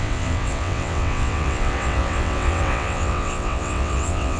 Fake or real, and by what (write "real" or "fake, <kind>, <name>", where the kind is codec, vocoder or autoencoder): fake, vocoder, WaveNeXt